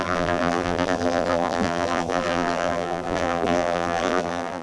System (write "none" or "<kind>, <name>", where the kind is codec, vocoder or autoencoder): vocoder, BigVGAN v2